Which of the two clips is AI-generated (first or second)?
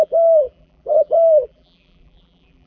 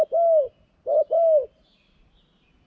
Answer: first